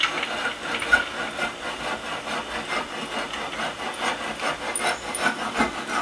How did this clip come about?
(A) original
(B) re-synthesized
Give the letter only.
A